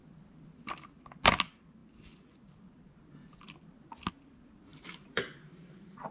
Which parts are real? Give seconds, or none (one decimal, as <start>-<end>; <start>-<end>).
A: 0.0-4.7